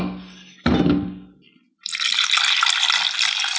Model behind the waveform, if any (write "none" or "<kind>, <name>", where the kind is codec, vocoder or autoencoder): none